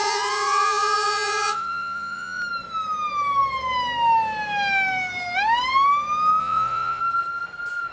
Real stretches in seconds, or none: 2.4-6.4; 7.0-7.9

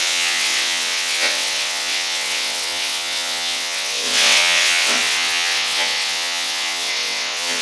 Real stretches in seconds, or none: none

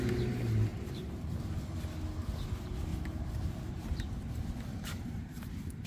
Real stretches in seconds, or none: 0.0-0.7; 1.3-2.9; 4.2-4.7; 5.5-5.9

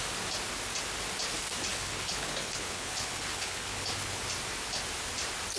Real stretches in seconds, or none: 0.0-1.7; 4.2-5.6